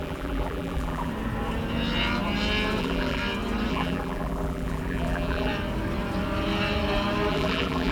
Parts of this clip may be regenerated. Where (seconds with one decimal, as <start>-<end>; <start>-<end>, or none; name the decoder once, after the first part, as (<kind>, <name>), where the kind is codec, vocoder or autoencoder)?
0.0-1.1 (vocoder, BigVGAN v2); 2.8-3.2; 3.7-5.5; 7.3-7.9